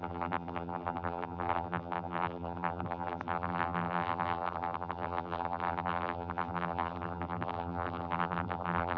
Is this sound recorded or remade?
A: remade